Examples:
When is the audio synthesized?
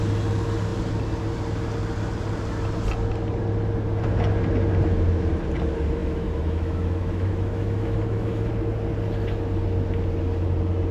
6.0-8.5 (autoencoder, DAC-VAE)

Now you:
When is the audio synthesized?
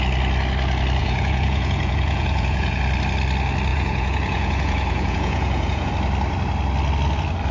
1.0-2.8 (vocoder, Vocos); 3.7-5.9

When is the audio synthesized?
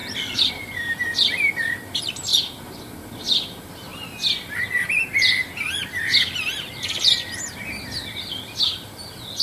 0.0-3.9 (vocoder, BigVGAN v2); 5.9-9.4